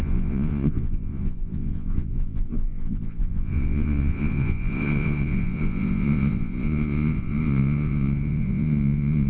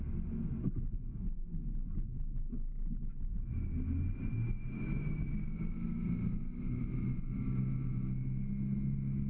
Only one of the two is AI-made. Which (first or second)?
first